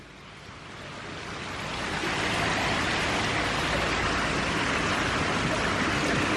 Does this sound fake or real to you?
real